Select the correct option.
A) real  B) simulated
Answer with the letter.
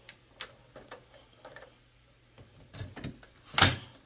A